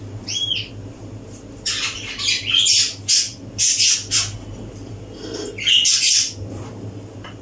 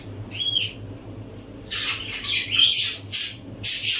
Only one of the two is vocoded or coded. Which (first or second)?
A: second